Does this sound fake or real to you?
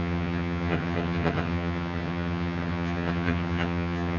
fake